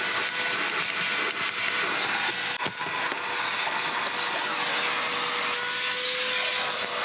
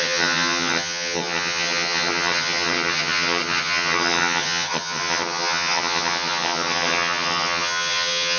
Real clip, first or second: first